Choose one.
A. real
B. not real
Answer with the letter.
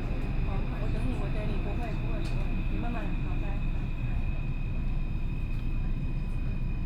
A